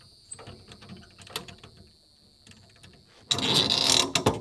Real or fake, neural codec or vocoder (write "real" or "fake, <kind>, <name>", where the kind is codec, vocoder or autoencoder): real